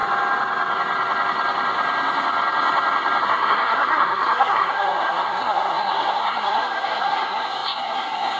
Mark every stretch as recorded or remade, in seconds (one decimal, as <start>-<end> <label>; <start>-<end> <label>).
0.0-3.2 recorded; 3.2-8.4 remade